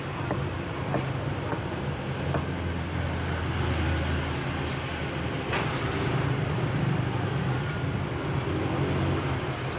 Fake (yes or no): no